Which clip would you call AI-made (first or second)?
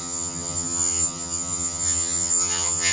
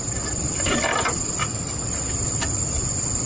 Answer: first